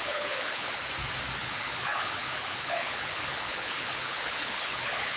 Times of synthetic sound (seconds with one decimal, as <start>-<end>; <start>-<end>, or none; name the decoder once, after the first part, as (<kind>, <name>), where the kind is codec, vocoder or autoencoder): 0.0-0.8 (codec, HILCodec); 1.4-5.2